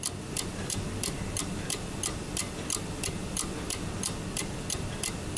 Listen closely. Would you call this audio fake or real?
real